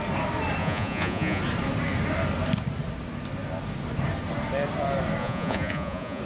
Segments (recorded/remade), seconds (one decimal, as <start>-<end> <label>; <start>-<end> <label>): 0.0-0.6 recorded; 0.6-1.4 remade; 1.4-5.2 recorded; 5.2-6.2 remade

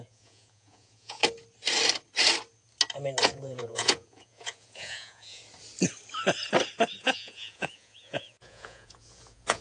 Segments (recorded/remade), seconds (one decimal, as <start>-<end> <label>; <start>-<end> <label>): 0.0-1.2 remade; 1.2-3.2 recorded; 3.2-5.4 remade; 5.4-7.0 recorded; 7.0-9.6 remade

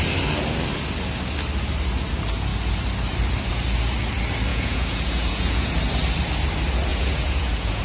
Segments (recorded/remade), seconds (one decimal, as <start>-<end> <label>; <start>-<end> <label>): 0.0-4.5 recorded; 4.5-5.7 remade; 5.7-6.9 recorded; 6.9-7.8 remade

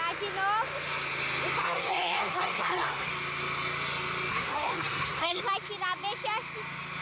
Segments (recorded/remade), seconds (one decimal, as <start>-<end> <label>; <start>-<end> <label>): 0.0-1.6 recorded; 1.6-3.1 remade; 3.1-4.3 recorded; 4.3-5.4 remade; 5.4-7.0 recorded

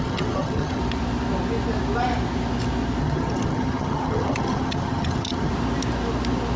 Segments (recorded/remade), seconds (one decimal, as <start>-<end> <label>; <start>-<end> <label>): 0.0-0.8 remade; 0.8-3.0 recorded; 3.0-5.5 remade; 5.5-6.6 recorded